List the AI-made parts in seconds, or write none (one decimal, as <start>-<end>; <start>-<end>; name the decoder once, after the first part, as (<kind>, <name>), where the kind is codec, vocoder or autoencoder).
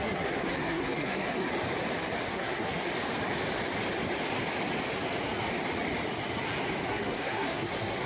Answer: 0.0-1.5 (codec, SNAC); 2.3-2.9; 6.9-8.1